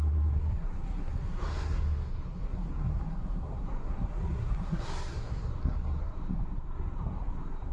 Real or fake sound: fake